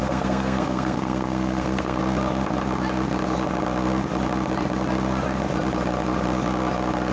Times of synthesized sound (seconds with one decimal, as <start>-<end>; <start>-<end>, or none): 0.0-2.0